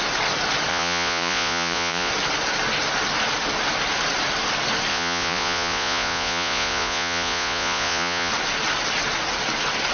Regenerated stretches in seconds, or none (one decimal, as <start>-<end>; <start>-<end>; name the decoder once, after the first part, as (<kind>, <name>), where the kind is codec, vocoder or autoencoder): 0.7-2.1 (vocoder, Vocos); 4.9-8.3